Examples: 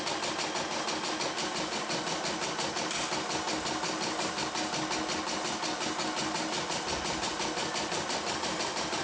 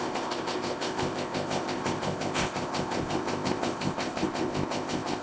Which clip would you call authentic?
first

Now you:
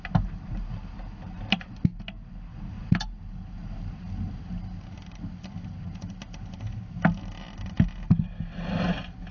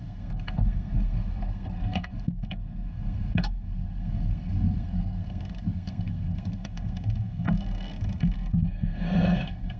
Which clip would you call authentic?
first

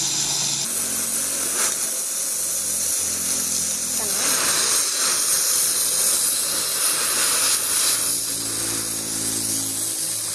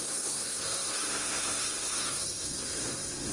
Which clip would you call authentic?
first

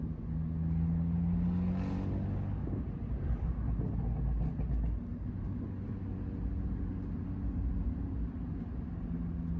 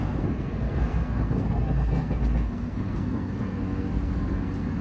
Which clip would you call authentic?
first